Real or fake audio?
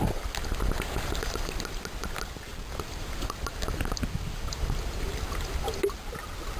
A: real